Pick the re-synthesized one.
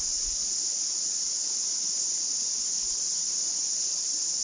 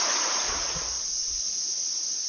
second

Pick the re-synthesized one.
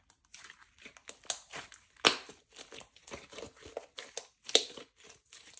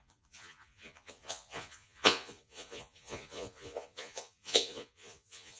second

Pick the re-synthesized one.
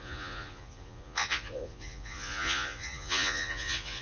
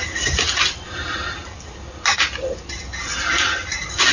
first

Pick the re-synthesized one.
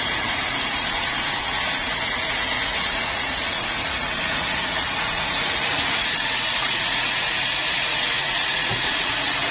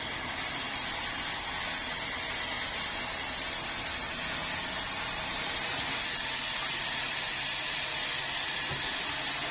first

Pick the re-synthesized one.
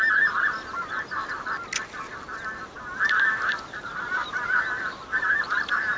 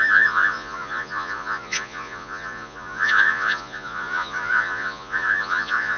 second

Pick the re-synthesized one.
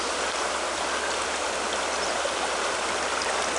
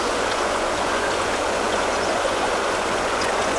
second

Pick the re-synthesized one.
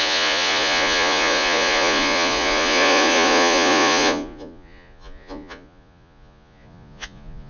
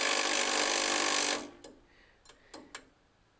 first